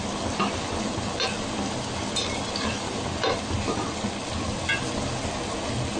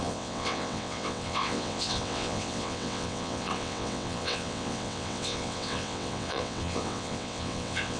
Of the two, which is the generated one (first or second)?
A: second